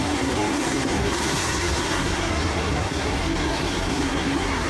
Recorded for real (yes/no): no